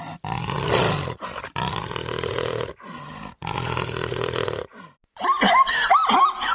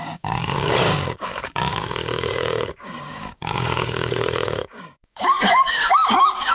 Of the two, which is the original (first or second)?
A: first